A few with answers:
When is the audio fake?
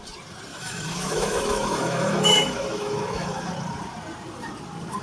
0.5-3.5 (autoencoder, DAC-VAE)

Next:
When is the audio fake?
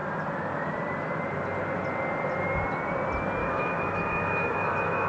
3.4-5.1 (autoencoder, DAC-VAE)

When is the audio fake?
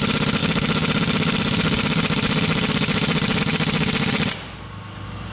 none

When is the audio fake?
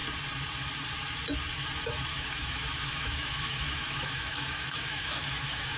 2.1-5.8 (autoencoder, DAC-VAE)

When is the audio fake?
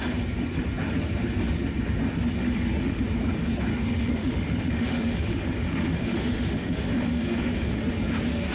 2.4-3.0 (autoencoder, DAC-VAE); 3.7-7.8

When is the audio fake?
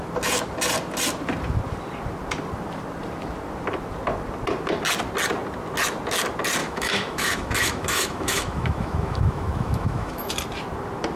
6.6-10.3 (autoencoder, DAC-VAE)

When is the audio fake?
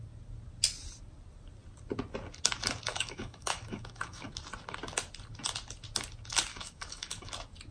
2.9-4.3 (autoencoder, DAC-VAE); 6.5-7.3